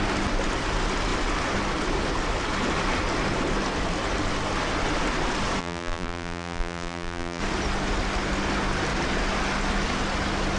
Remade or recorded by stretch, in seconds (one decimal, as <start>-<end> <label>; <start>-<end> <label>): 0.0-5.6 recorded; 5.6-7.4 remade; 7.4-10.6 recorded

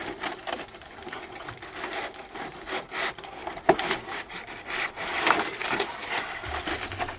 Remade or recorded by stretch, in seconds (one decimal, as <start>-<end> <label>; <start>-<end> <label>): 0.0-3.4 recorded; 3.4-5.6 remade; 5.6-7.2 recorded

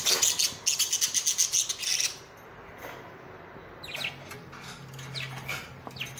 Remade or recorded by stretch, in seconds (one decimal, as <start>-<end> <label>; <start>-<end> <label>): 0.0-6.2 recorded